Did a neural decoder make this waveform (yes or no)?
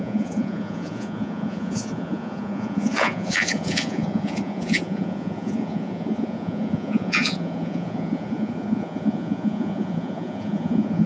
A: yes